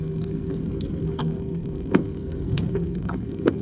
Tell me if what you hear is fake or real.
fake